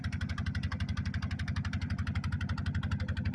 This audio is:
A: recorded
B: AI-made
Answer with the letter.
A